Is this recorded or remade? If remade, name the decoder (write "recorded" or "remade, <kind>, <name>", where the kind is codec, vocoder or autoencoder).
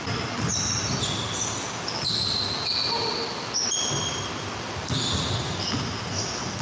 recorded